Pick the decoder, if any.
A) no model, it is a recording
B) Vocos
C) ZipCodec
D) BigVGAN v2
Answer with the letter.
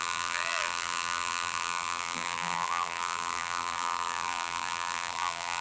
D